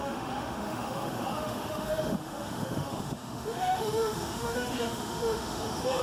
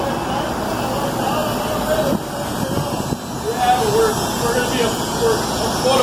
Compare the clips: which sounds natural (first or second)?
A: second